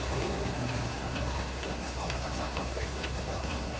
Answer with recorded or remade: remade